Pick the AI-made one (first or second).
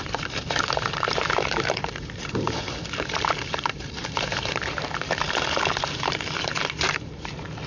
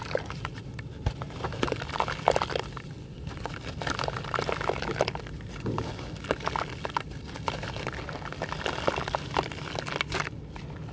first